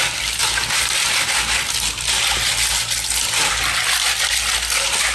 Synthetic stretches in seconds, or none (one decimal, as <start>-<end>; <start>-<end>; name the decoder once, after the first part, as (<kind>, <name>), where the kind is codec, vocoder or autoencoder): none